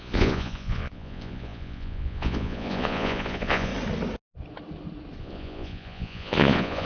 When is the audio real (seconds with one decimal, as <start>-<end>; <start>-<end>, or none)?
3.7-5.2